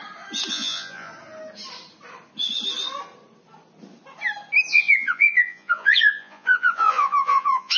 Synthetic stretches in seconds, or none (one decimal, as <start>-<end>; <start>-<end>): 0.5-1.1; 4.7-7.8